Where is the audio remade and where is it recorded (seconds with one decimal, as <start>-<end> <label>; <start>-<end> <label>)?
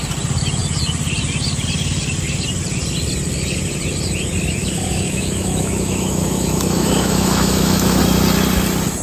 0.0-4.6 recorded; 4.6-8.0 remade; 8.0-9.0 recorded